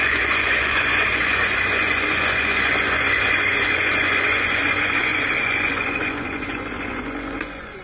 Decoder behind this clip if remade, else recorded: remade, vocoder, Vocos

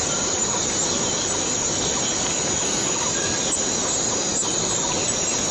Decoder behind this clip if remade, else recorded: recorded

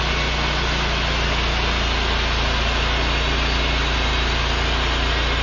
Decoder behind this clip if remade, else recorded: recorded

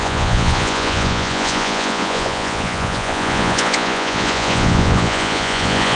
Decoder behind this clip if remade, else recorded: remade, vocoder, Vocos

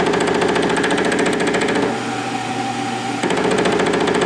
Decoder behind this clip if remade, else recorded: recorded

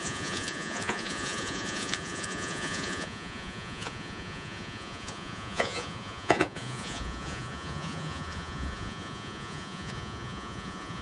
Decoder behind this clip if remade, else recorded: remade, vocoder, Vocos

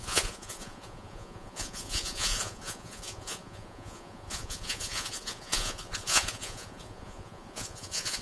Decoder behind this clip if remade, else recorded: remade, vocoder, Vocos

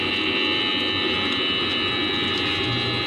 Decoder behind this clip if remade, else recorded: recorded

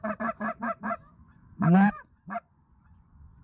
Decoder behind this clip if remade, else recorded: remade, vocoder, Vocos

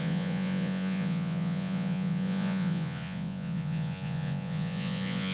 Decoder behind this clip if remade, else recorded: remade, vocoder, Vocos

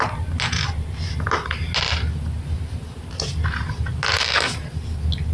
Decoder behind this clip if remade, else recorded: recorded